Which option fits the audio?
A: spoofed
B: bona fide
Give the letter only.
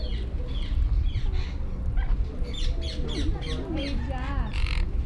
B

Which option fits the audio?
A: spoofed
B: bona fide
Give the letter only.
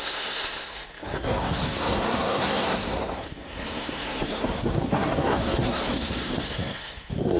A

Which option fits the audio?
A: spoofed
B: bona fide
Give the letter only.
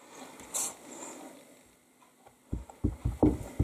B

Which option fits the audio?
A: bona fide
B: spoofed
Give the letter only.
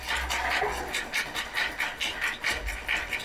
A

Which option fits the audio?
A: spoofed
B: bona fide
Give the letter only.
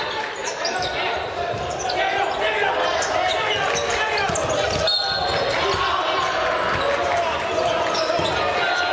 B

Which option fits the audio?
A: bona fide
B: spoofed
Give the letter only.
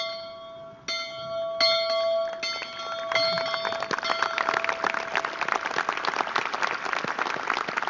A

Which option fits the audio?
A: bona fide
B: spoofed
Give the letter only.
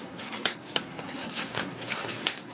B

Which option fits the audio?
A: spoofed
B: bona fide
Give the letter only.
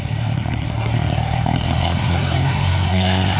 A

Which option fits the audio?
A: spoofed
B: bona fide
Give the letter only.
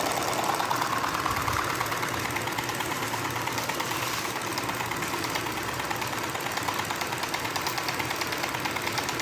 B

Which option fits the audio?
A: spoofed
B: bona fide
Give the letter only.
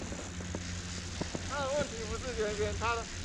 B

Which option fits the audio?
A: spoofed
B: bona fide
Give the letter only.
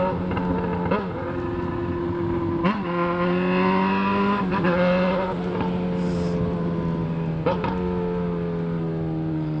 B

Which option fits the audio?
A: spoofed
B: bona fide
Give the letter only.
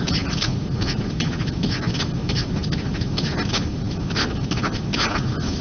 B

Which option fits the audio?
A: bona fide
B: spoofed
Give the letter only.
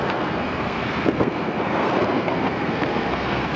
B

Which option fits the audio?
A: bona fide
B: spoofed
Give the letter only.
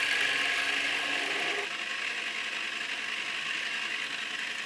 A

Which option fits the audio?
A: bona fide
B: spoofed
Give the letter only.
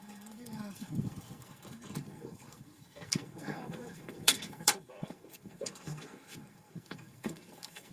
B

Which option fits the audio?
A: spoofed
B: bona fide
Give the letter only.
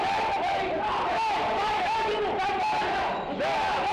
B